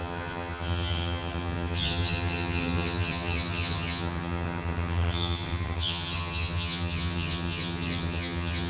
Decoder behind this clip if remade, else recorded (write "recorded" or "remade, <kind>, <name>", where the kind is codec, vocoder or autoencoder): remade, vocoder, HiFi-GAN